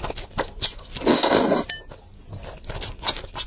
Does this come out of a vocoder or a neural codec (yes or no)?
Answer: no